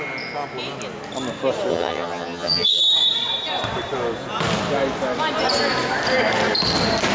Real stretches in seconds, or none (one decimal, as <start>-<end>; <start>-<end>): 0.0-1.7; 2.8-7.1